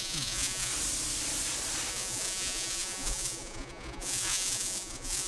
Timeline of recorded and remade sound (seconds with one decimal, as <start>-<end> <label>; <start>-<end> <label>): 0.0-0.7 remade; 0.7-1.9 recorded; 1.9-5.3 remade